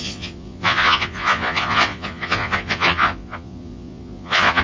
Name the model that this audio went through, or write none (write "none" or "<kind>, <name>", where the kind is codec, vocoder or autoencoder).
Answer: vocoder, Vocos